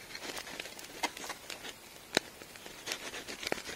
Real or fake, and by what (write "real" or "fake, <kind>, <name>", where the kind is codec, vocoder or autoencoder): real